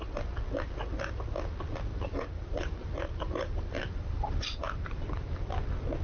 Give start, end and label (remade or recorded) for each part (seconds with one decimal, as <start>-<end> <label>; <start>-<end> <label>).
0.0-1.9 recorded; 1.9-5.5 remade; 5.5-6.0 recorded